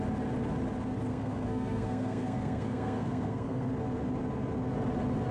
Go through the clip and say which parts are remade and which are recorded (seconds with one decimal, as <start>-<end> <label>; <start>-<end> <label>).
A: 0.0-1.1 recorded; 1.1-3.7 remade; 3.7-5.3 recorded